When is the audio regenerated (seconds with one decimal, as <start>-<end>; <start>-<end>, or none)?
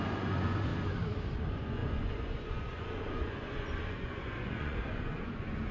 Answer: 0.0-0.7; 1.4-5.7